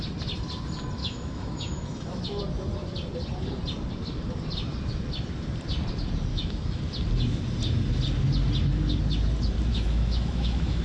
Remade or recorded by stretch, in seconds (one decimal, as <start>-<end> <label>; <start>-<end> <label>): 0.0-1.0 recorded; 1.0-2.4 remade; 2.4-6.3 recorded; 6.3-6.8 remade; 6.8-9.7 recorded; 9.7-10.8 remade